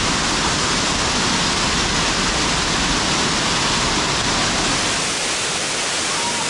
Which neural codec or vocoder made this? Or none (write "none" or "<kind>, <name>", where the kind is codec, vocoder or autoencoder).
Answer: none